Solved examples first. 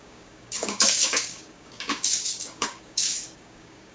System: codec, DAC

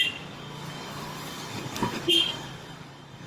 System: codec, DAC